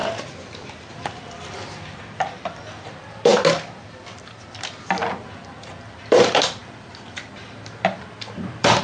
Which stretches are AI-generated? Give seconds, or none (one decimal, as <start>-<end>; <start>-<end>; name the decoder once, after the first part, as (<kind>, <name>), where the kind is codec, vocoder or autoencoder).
0.9-3.3 (vocoder, BigVGAN v2); 5.0-8.8